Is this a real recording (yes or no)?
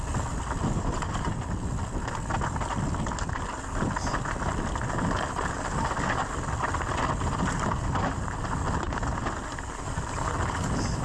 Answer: yes